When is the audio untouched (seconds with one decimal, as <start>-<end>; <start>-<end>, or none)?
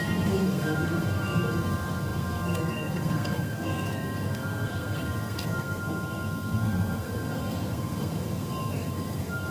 none